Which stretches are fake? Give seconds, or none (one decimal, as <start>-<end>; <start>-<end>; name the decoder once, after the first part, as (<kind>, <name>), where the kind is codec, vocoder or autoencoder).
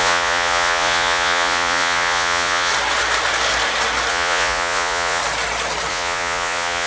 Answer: 0.0-2.7 (vocoder, Vocos); 4.1-5.2; 5.9-6.9